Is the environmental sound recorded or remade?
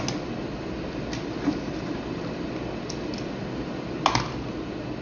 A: recorded